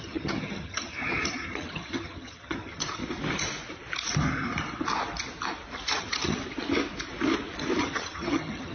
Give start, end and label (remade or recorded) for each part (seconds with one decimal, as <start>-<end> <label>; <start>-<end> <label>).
0.0-3.0 remade; 3.0-6.0 recorded; 6.0-6.4 remade; 6.4-7.8 recorded; 7.8-8.7 remade